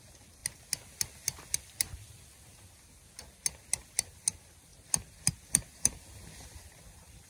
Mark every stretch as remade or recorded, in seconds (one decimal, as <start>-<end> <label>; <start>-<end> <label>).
0.0-7.3 recorded